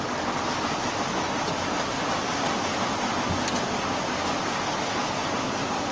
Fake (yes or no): no